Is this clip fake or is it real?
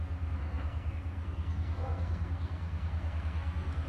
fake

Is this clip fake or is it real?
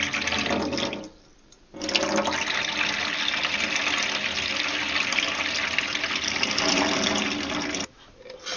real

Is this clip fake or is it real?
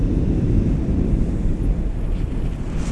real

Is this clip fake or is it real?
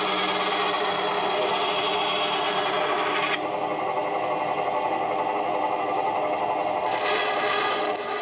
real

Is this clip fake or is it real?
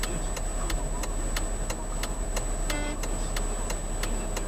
real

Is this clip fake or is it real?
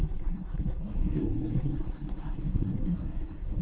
fake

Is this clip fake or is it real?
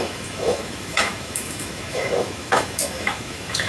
fake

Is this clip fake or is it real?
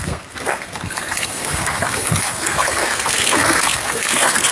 fake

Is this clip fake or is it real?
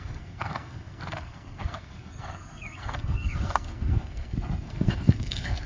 fake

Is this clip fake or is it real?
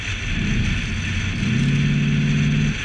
real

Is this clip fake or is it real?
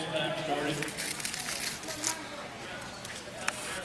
real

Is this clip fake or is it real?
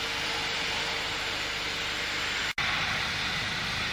real